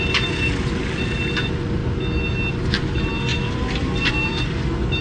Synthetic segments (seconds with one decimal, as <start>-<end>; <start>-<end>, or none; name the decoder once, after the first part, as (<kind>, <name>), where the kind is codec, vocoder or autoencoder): none